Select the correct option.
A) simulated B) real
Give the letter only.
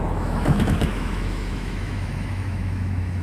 A